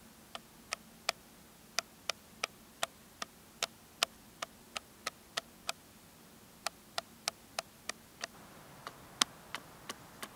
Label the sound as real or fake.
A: real